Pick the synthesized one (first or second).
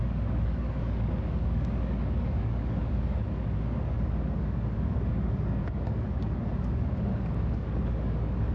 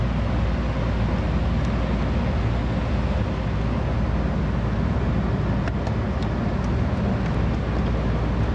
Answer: first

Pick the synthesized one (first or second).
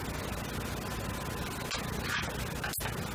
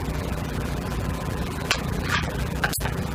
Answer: second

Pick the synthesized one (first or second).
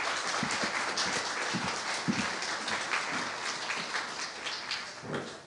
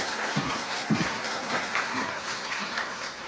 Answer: second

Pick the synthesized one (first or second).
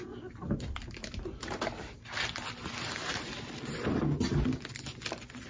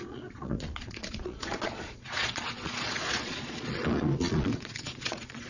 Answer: second